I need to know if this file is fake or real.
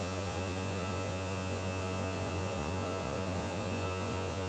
fake